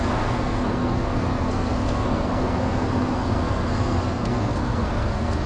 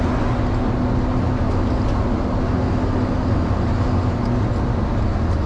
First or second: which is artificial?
first